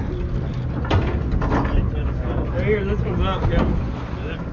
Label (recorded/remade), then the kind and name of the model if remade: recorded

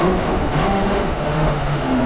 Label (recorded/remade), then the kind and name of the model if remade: remade, autoencoder, DAC-VAE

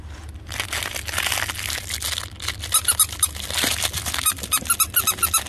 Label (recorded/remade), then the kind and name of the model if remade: recorded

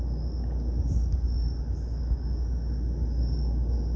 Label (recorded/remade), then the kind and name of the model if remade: recorded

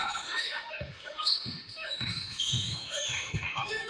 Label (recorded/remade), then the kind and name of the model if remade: remade, autoencoder, DAC-VAE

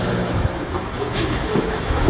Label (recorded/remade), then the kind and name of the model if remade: remade, autoencoder, DAC-VAE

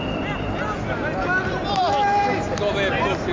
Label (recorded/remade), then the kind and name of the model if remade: recorded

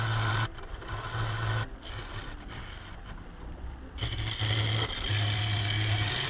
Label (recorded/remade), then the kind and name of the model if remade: recorded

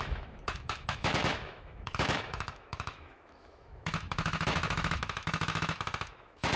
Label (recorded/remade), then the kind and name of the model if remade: remade, autoencoder, DAC-VAE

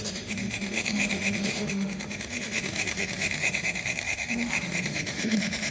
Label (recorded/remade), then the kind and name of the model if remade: remade, autoencoder, DAC-VAE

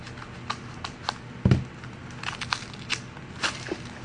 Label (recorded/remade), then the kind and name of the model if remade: recorded